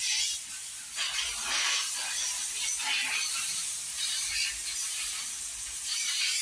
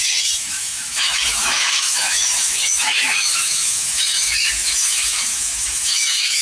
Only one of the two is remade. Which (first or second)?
second